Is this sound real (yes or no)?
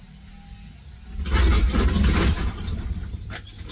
yes